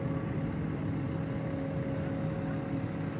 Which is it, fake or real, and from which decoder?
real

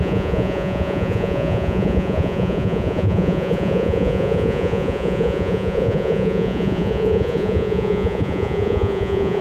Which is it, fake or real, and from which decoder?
fake, vocoder, Vocos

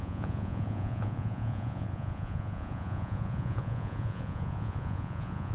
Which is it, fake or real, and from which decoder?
fake, vocoder, Vocos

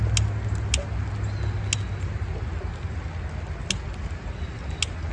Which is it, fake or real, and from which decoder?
real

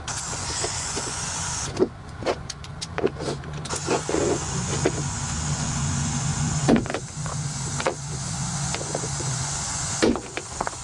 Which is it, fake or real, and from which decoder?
fake, vocoder, Vocos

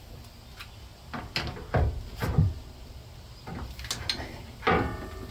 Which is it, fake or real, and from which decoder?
real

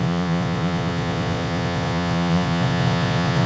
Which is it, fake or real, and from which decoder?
fake, vocoder, Vocos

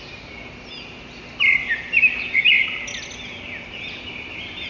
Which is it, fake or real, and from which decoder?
real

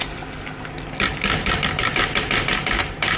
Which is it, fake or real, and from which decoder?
real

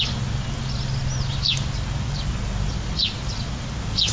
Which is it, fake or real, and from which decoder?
real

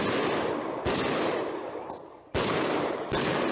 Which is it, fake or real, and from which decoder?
real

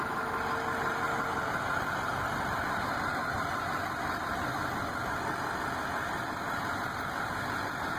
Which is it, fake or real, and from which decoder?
real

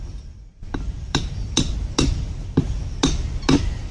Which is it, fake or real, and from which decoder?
real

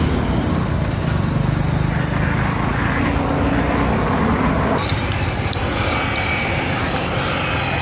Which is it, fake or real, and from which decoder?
real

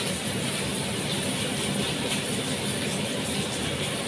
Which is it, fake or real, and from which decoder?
real